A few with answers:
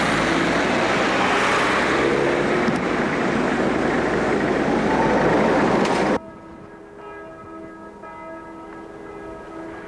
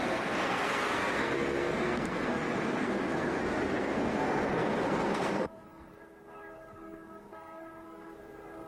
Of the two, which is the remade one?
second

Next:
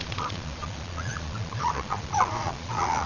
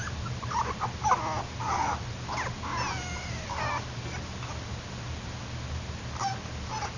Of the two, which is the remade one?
first